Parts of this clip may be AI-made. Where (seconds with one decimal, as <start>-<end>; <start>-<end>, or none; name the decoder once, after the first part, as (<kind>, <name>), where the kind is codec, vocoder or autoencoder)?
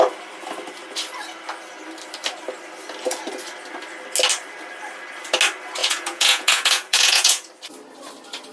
5.8-7.5 (vocoder, Vocos)